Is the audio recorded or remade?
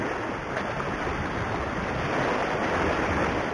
recorded